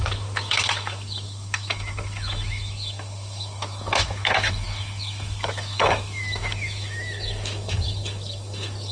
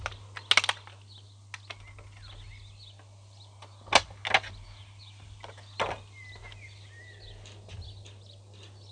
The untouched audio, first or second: second